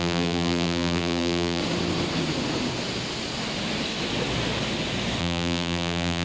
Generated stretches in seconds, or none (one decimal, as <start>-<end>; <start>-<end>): 0.0-1.6; 5.2-6.2